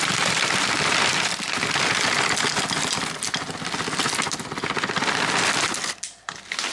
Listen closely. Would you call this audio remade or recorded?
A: recorded